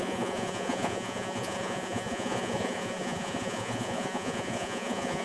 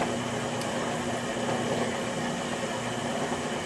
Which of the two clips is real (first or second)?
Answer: second